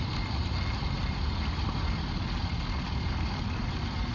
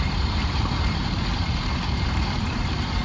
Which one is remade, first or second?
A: second